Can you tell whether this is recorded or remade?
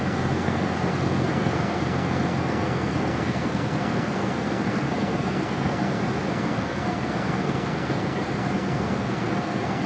remade